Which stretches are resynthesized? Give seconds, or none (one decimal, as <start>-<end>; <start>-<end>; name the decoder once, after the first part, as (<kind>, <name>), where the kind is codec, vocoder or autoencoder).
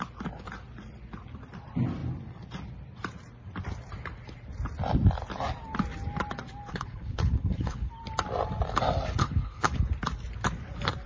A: 6.7-7.9 (codec, HILCodec); 9.2-9.8